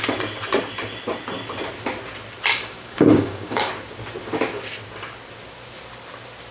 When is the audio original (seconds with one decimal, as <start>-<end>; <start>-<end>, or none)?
0.0-2.5; 3.7-6.5